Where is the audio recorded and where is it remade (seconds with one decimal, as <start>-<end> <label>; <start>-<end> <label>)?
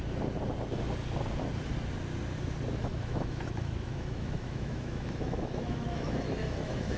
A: 0.0-2.8 recorded; 2.8-7.0 remade